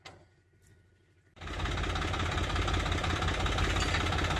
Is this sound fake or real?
real